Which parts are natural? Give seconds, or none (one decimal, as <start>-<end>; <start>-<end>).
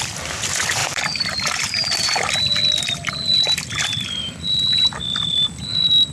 0.0-0.8; 1.9-6.1